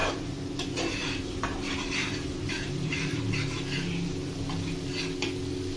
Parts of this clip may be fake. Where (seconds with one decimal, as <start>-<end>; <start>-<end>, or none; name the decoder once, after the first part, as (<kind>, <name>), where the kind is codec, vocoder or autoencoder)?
0.0-3.2 (vocoder, BigVGAN v2)